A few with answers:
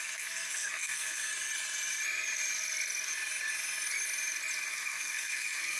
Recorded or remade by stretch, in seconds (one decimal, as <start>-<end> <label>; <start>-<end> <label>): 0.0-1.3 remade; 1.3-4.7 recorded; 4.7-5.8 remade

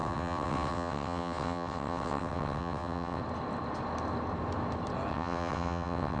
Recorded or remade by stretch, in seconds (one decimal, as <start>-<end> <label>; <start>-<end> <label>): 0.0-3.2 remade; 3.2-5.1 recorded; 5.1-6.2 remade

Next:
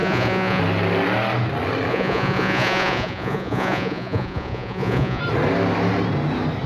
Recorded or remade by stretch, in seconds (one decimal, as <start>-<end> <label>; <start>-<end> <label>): 0.0-0.6 remade; 0.6-1.9 recorded; 1.9-5.2 remade; 5.2-6.7 recorded

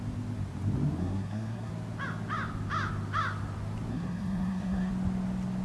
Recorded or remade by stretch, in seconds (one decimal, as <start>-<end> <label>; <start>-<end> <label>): 0.0-1.0 recorded; 1.0-1.7 remade; 1.7-3.9 recorded; 3.9-4.9 remade; 4.9-5.6 recorded

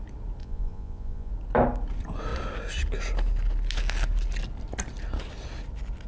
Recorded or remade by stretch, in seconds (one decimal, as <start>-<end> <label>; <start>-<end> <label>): 0.0-0.4 recorded; 0.4-1.3 remade; 1.3-6.1 recorded

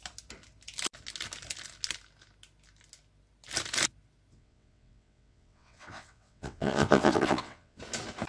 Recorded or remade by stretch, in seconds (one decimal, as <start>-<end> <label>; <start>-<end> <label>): 0.0-4.3 recorded; 4.3-7.8 remade; 7.8-8.3 recorded

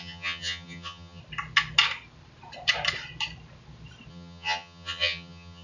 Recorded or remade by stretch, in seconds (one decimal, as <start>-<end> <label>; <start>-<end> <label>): 0.0-1.2 remade; 1.2-4.1 recorded; 4.1-5.6 remade